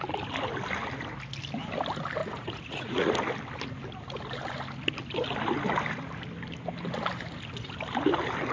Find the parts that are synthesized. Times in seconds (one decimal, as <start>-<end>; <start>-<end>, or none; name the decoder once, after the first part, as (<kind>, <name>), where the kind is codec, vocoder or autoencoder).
2.2-3.1 (vocoder, Vocos)